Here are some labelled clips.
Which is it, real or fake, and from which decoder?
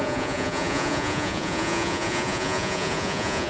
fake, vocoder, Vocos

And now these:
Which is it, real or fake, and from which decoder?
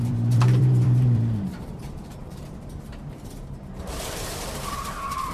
fake, vocoder, BigVGAN v2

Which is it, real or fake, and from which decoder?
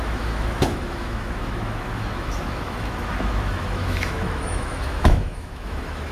fake, autoencoder, DAC-VAE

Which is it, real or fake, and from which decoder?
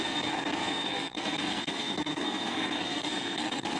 fake, codec, SNAC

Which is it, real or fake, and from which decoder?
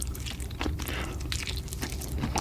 real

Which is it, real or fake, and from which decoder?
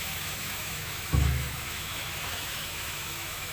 fake, autoencoder, DAC-VAE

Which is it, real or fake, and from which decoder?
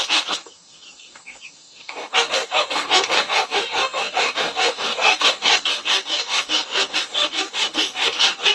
fake, codec, DAC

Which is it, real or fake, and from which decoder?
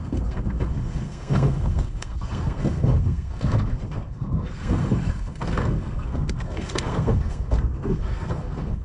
fake, codec, SNAC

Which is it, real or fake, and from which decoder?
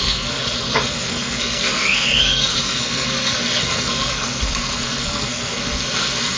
fake, codec, SNAC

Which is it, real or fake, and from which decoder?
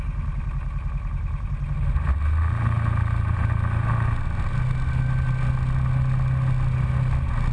real